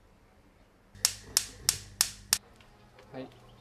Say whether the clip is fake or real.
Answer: real